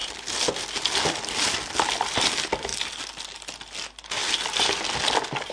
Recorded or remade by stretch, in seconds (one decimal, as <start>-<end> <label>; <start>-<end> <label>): 0.0-5.5 recorded